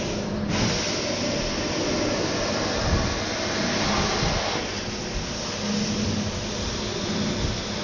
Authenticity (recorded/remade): recorded